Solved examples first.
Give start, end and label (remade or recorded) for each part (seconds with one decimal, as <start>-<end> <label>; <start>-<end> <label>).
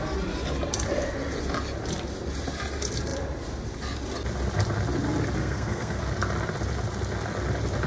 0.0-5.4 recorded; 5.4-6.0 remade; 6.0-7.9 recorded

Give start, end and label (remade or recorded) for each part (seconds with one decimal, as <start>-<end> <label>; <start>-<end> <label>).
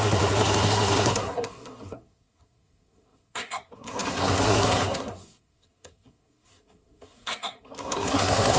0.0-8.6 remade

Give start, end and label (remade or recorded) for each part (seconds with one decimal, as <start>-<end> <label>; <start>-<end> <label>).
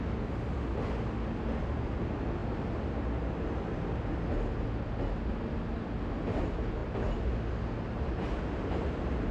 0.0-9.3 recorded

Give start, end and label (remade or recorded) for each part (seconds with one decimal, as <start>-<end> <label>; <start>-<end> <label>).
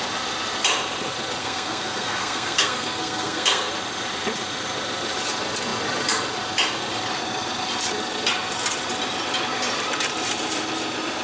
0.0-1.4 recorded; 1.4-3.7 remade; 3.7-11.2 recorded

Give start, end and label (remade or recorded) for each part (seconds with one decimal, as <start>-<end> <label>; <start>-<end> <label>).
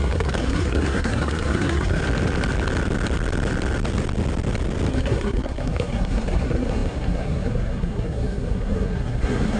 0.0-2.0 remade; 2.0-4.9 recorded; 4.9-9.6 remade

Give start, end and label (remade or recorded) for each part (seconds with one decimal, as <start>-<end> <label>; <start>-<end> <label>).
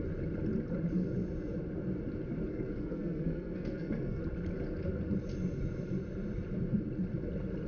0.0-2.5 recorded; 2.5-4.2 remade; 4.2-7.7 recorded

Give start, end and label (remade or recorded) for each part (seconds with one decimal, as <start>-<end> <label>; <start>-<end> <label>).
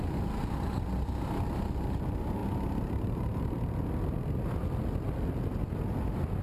0.0-6.4 recorded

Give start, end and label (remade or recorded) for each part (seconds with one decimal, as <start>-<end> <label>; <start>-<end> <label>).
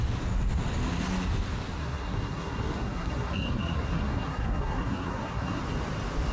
0.0-1.8 recorded; 1.8-5.6 remade; 5.6-6.3 recorded